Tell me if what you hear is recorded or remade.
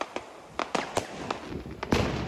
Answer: recorded